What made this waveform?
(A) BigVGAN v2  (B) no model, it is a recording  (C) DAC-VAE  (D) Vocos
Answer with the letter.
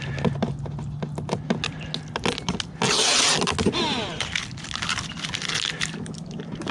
B